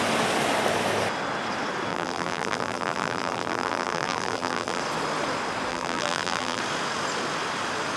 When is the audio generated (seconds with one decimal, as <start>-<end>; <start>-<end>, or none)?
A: 1.9-4.8; 5.7-6.6